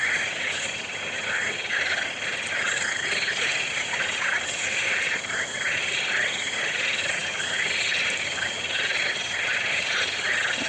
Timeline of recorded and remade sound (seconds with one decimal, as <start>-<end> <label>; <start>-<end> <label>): 0.0-10.7 recorded